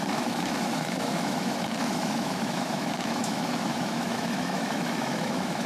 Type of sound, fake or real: fake